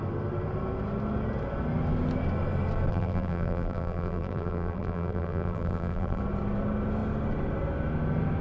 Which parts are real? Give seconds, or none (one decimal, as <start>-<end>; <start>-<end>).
0.0-2.9; 6.2-8.4